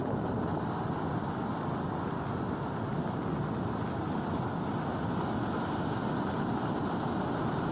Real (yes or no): yes